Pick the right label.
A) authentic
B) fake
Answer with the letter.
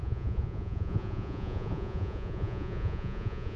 B